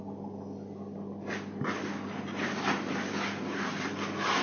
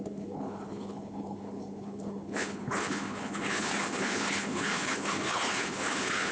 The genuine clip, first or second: first